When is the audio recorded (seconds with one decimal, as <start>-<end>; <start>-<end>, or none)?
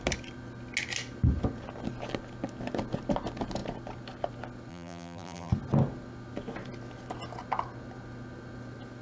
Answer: 0.0-4.7; 5.5-9.0